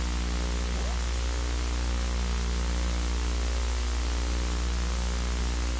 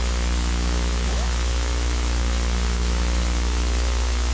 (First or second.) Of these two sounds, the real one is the first